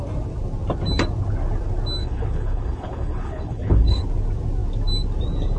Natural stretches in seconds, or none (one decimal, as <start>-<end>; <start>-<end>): 0.0-2.0; 4.0-5.6